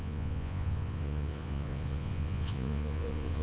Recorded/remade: remade